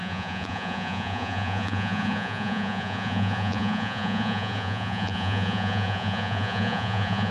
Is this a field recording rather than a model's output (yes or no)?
no